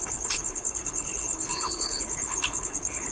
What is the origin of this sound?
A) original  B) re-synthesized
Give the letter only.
B